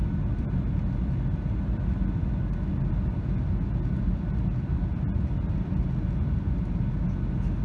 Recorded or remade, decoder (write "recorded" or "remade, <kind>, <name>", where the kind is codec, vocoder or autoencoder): recorded